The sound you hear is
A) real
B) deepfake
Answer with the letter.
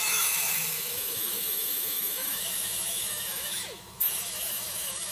B